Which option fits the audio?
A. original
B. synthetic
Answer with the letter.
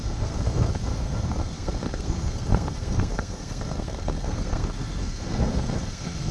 B